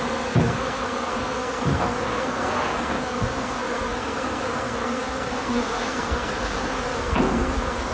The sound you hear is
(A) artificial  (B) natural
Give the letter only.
A